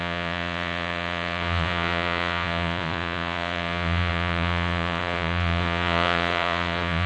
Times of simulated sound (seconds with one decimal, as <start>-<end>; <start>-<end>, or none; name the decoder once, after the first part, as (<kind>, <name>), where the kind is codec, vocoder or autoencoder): 0.0-7.1 (vocoder, Vocos)